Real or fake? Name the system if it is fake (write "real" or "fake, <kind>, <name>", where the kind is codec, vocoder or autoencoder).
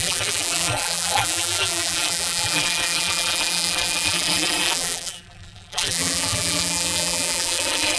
fake, vocoder, BigVGAN v2